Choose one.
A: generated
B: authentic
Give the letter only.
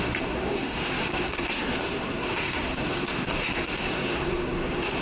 A